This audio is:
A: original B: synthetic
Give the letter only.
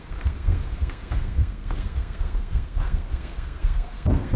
B